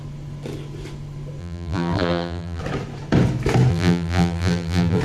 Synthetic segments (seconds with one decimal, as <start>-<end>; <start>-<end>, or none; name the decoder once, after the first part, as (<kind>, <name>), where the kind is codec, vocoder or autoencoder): 1.4-2.6 (vocoder, BigVGAN v2); 3.7-5.0